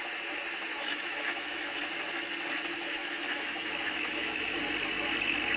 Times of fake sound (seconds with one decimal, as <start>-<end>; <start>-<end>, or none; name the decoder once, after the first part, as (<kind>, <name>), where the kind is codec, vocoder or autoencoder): 0.7-1.8 (autoencoder, DAC-VAE); 3.0-4.6